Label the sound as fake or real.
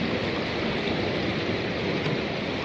real